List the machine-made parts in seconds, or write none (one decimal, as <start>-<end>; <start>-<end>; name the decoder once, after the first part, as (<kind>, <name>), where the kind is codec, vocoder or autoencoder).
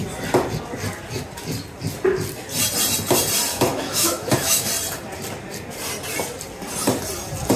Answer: 3.5-4.7 (autoencoder, DAC-VAE)